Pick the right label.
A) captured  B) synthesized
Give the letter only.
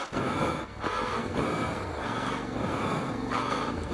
B